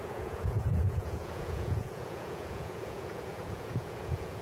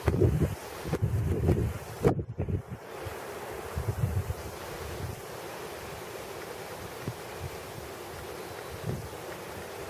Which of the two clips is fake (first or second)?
first